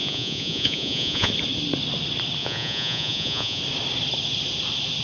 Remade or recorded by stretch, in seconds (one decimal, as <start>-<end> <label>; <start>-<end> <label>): 0.0-1.3 remade; 1.3-2.4 recorded; 2.4-3.6 remade; 3.6-5.0 recorded